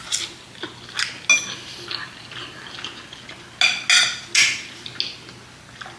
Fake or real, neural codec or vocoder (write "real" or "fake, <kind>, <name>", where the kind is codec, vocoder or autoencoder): real